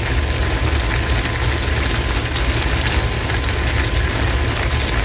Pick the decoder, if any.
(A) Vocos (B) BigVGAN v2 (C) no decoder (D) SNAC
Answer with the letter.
C